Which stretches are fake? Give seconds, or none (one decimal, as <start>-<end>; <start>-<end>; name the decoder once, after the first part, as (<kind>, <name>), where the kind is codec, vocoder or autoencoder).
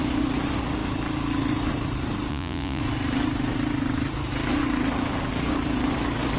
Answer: 2.3-2.8 (vocoder, Vocos)